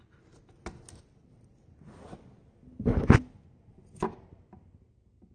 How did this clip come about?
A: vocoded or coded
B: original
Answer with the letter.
B